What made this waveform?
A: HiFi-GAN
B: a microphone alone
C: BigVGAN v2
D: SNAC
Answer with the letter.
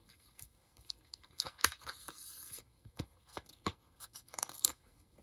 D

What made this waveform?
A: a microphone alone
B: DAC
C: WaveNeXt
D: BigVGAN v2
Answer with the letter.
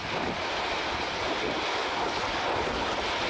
A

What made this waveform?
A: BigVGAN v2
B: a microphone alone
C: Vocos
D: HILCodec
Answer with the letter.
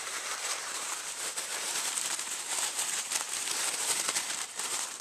A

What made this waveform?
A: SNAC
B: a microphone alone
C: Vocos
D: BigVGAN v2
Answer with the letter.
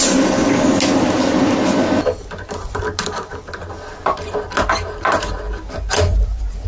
B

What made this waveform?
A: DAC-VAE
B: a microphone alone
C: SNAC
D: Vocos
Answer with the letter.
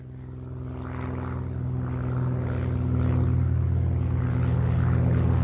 B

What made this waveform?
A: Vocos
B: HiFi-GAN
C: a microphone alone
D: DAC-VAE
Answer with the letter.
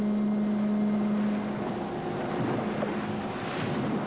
C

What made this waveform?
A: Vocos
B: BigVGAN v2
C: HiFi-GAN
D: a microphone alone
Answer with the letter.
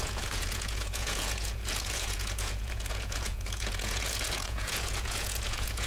A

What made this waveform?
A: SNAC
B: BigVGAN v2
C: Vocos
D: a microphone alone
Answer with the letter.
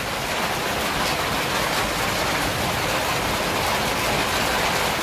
B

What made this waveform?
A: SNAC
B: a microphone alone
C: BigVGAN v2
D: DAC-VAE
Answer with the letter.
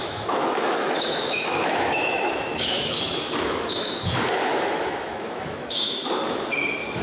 D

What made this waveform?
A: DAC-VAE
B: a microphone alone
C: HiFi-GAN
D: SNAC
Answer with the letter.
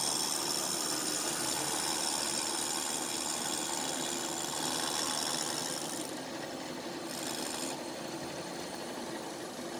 B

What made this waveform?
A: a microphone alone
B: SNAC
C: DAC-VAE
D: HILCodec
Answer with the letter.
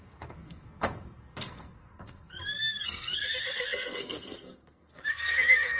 B